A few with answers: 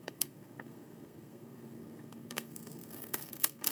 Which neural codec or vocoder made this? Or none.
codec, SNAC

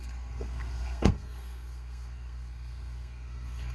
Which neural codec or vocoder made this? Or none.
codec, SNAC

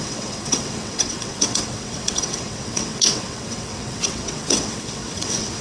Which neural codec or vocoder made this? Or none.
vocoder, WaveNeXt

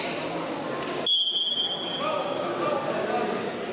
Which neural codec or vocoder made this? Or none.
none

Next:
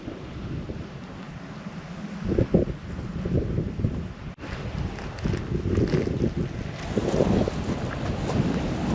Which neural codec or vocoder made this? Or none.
none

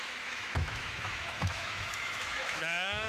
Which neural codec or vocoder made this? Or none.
autoencoder, DAC-VAE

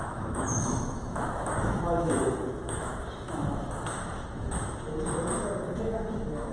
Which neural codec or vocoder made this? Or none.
autoencoder, DAC-VAE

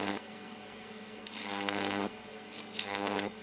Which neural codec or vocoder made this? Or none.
codec, SNAC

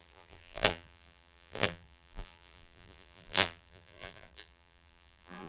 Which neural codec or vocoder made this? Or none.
vocoder, BigVGAN v2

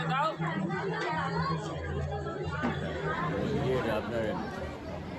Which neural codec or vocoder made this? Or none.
none